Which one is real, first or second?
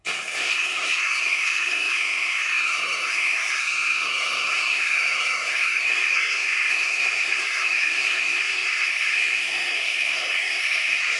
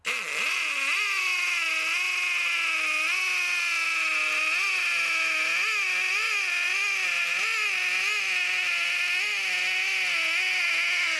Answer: second